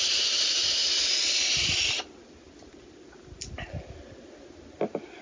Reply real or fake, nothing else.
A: real